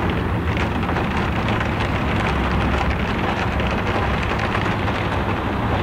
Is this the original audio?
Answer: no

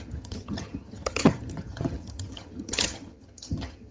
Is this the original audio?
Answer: no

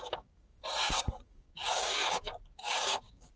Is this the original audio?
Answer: no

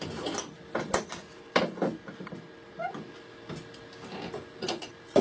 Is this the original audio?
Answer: yes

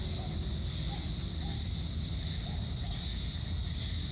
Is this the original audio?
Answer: yes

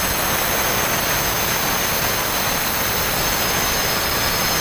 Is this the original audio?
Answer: yes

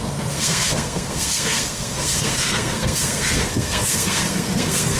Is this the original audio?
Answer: no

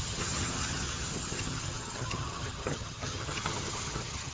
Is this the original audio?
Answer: no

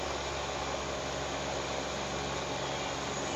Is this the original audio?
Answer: yes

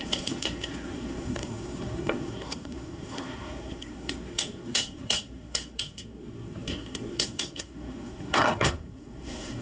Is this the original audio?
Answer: no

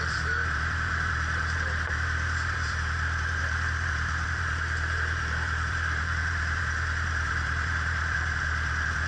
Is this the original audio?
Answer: no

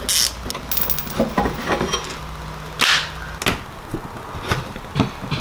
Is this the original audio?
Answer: yes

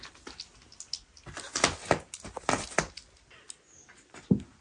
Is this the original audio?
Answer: yes